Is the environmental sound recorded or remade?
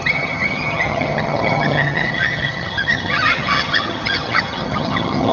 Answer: remade